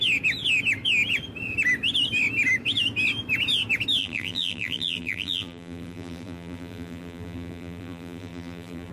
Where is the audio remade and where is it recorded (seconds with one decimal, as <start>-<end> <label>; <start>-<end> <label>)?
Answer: 0.0-4.0 recorded; 4.0-8.9 remade